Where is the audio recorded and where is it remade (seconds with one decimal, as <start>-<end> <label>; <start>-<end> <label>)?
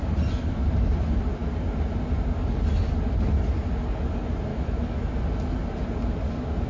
0.0-4.5 recorded; 4.5-5.1 remade; 5.1-6.7 recorded